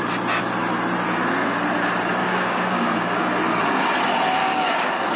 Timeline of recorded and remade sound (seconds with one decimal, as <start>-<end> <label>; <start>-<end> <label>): 0.0-2.2 recorded; 2.2-3.2 remade; 3.2-4.4 recorded; 4.4-5.2 remade

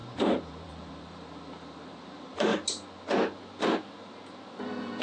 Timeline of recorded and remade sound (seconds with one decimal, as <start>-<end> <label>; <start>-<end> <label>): 0.0-2.5 remade; 2.5-4.6 recorded; 4.6-5.0 remade

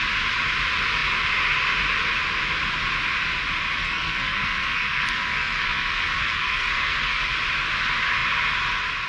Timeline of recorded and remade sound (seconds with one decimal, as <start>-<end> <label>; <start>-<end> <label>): 0.0-3.8 recorded; 3.8-7.2 remade; 7.2-9.1 recorded

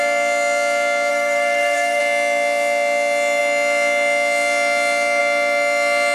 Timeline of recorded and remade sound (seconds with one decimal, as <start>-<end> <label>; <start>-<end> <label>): 0.0-1.1 recorded; 1.1-2.0 remade; 2.0-6.1 recorded

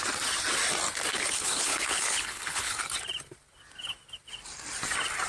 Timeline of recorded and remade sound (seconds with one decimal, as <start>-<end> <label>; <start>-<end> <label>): 0.0-1.1 recorded; 1.1-2.8 remade; 2.8-5.3 recorded

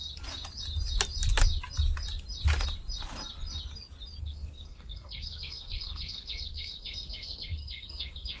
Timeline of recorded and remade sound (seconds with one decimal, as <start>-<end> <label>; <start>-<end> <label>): 0.0-4.2 recorded; 4.2-8.4 remade

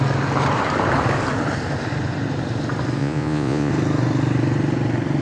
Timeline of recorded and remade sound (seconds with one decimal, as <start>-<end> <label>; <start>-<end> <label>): 0.0-3.0 recorded; 3.0-3.7 remade; 3.7-5.2 recorded

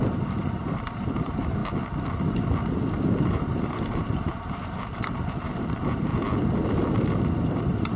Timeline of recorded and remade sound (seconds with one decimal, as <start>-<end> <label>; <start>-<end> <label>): 0.0-1.6 remade; 1.6-3.1 recorded; 3.1-6.1 remade; 6.1-7.6 recorded; 7.6-8.0 remade